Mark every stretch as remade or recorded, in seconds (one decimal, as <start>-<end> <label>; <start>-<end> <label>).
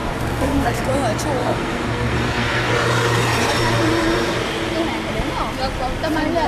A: 0.0-0.9 remade; 0.9-1.4 recorded; 1.4-2.7 remade; 2.7-6.5 recorded